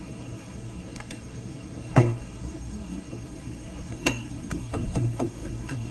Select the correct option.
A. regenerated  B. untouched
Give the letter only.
A